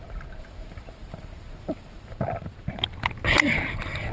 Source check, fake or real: real